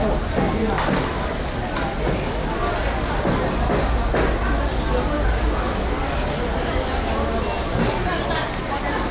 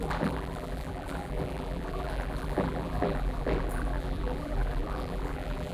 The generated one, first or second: second